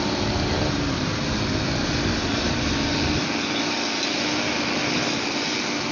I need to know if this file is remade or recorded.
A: recorded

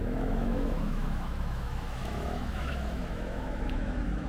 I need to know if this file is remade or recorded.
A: remade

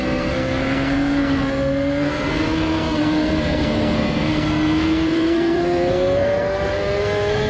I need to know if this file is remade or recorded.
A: remade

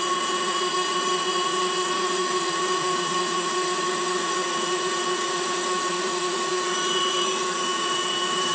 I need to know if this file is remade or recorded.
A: remade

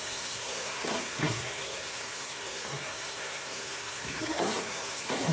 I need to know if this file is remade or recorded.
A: remade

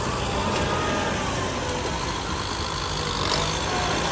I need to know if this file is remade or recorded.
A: recorded